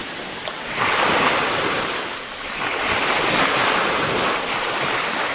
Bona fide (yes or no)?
yes